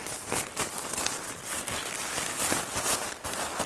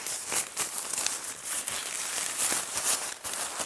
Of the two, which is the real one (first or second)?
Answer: first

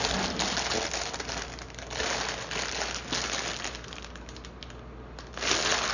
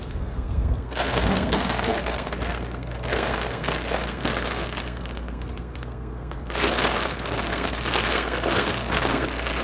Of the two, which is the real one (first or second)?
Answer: first